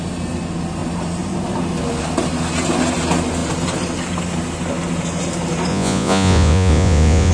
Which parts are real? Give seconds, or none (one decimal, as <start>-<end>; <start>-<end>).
0.0-5.7